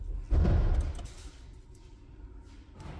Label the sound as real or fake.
real